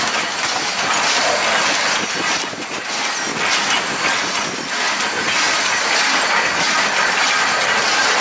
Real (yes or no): yes